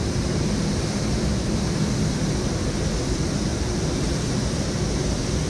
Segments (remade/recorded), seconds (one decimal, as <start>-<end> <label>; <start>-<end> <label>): 0.0-0.9 remade; 0.9-3.5 recorded; 3.5-4.2 remade; 4.2-5.5 recorded